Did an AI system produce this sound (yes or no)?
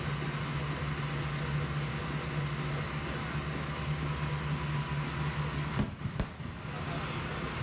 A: no